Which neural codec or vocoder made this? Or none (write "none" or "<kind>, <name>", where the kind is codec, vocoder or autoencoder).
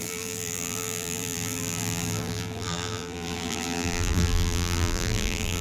vocoder, BigVGAN v2